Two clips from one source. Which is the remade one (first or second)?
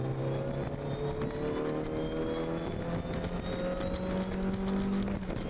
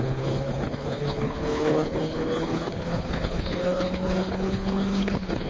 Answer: second